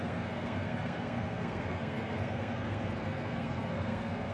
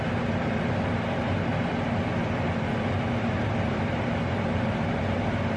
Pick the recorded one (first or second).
second